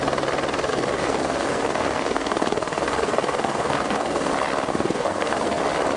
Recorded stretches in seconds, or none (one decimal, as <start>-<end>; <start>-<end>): 0.0-0.7; 4.3-4.7; 5.6-6.0